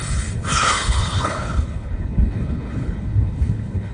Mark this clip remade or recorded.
remade